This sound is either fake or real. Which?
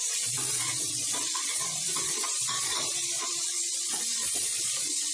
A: fake